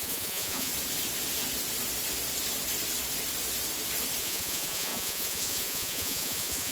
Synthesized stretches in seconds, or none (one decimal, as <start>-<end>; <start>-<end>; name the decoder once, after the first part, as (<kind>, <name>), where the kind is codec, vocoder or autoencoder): 0.0-0.7 (vocoder, Vocos); 4.2-6.7

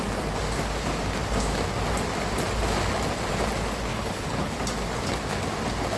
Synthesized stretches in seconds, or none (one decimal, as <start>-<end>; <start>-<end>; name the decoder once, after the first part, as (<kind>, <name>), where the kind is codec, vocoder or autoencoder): 3.9-4.5 (codec, HILCodec)

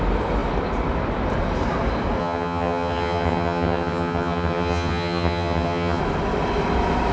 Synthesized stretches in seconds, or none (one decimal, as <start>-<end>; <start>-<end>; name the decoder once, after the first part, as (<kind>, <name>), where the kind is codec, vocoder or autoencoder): 2.2-6.0 (vocoder, HiFi-GAN)

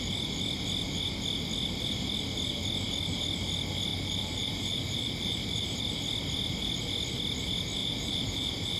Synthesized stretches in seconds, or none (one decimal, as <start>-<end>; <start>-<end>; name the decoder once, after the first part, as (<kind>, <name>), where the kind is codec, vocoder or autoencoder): 3.9-5.8 (vocoder, BigVGAN v2); 7.8-8.8

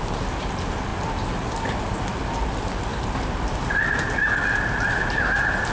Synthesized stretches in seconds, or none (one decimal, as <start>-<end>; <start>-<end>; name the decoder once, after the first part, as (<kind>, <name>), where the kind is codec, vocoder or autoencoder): none

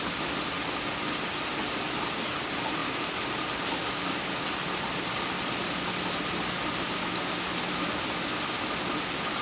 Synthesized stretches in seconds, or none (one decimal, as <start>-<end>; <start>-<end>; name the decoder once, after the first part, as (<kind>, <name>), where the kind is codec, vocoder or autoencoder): none

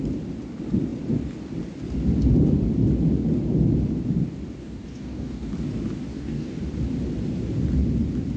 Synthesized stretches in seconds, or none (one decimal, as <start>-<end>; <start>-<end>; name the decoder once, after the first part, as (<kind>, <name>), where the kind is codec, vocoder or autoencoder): 4.6-5.5 (codec, DAC); 6.1-6.6